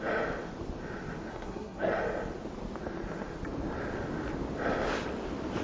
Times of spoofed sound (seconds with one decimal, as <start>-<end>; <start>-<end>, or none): 1.3-2.0